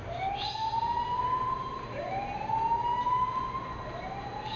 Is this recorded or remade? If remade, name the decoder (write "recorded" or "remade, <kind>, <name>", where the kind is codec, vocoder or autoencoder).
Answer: recorded